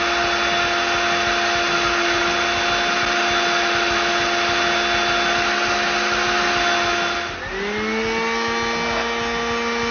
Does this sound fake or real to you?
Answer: real